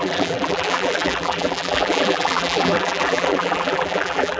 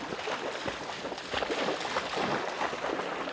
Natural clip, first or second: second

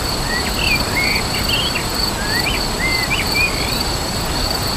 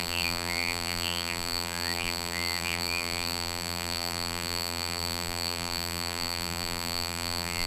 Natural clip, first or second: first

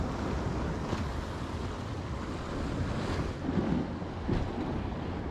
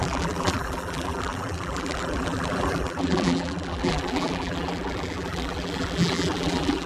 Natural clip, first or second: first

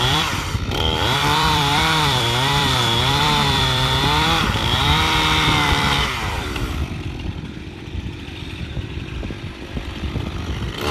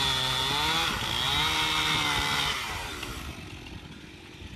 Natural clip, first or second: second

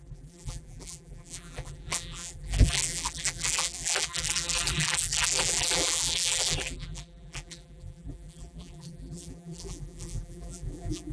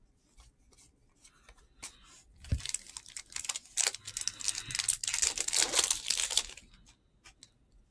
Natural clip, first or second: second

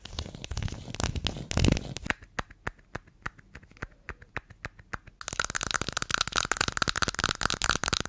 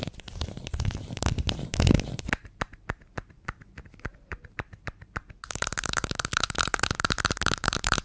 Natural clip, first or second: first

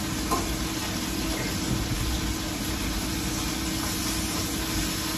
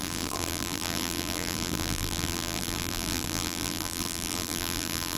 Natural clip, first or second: first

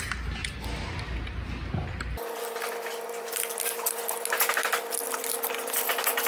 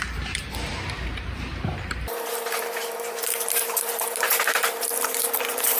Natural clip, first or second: first